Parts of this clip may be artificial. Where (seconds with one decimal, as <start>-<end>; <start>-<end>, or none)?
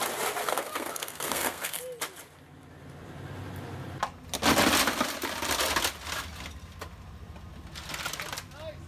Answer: 0.4-1.8